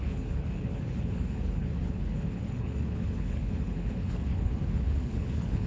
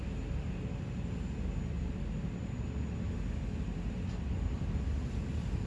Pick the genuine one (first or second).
second